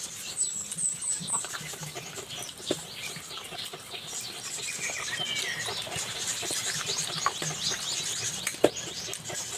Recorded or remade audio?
recorded